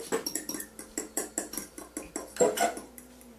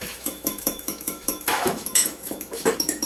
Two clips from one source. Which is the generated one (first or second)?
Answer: second